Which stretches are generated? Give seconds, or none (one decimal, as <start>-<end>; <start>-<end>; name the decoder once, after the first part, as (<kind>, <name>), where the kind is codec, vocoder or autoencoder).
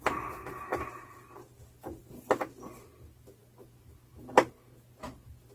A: none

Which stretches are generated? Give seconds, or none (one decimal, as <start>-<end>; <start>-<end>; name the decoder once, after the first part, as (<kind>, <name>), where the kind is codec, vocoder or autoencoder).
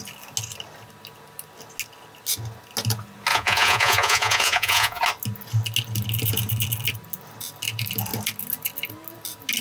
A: 3.3-5.0 (vocoder, Vocos)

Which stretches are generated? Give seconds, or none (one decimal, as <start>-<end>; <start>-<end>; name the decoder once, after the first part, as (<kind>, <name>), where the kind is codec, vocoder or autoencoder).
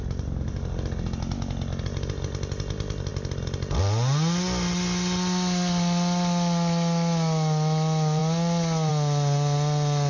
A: none